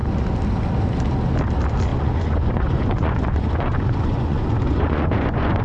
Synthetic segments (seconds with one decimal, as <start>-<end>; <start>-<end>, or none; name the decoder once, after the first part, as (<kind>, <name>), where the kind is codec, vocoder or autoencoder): 1.9-5.6 (vocoder, Vocos)